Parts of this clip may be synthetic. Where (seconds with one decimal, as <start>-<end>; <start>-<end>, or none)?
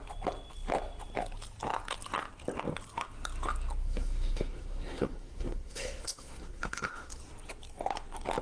3.8-7.2